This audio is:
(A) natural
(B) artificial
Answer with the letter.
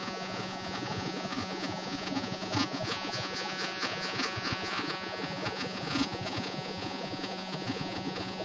B